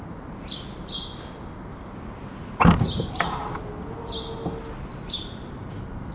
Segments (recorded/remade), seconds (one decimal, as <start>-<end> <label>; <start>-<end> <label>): 0.0-2.3 recorded; 2.3-3.6 remade; 3.6-4.9 recorded; 4.9-6.1 remade